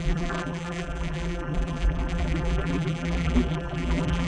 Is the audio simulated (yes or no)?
yes